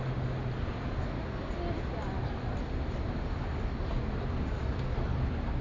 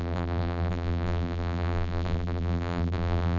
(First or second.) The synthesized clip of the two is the second